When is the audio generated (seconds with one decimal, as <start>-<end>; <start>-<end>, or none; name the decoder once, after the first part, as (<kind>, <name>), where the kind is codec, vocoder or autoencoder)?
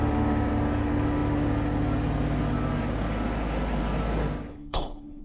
4.5-5.2 (codec, HILCodec)